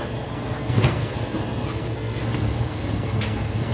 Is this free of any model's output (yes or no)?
no